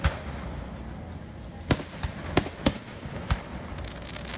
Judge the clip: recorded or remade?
recorded